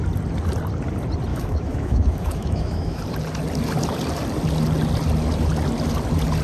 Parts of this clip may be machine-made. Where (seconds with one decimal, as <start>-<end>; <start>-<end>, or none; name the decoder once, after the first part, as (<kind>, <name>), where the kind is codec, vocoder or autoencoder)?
1.3-3.0 (autoencoder, DAC-VAE)